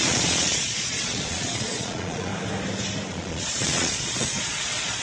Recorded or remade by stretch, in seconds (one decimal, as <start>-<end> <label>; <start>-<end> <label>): 0.0-2.3 remade; 2.3-3.1 recorded; 3.1-5.0 remade